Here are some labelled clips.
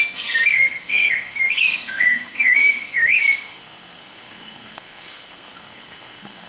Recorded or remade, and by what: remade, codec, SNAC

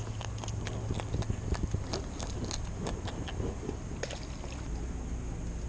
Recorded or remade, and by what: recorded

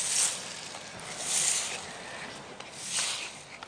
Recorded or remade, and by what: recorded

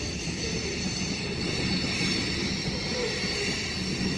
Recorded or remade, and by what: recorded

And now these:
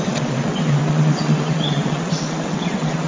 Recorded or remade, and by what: remade, vocoder, WaveNeXt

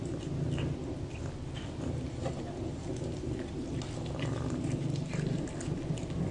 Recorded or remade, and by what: recorded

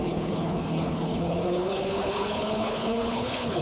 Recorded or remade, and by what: remade, codec, HILCodec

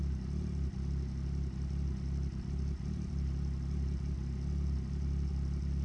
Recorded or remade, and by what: recorded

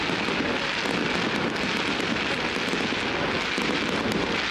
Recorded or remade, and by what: recorded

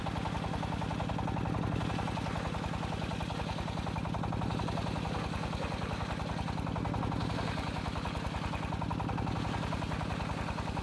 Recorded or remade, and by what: recorded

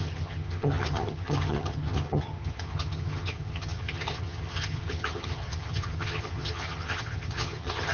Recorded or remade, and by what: remade, vocoder, HiFi-GAN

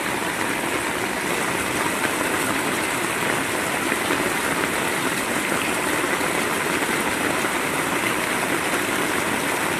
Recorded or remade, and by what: recorded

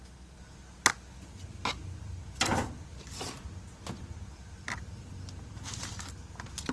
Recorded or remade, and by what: recorded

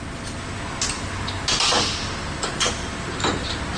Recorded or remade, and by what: recorded